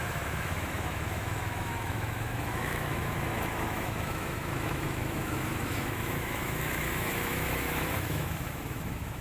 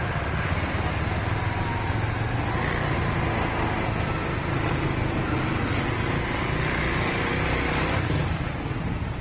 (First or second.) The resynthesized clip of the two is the first